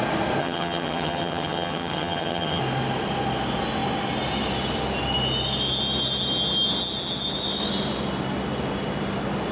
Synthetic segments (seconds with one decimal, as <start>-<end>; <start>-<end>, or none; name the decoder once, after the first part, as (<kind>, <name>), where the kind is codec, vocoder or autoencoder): 0.4-2.6 (vocoder, HiFi-GAN)